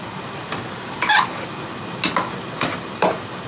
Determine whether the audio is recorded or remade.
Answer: recorded